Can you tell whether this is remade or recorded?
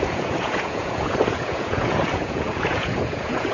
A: remade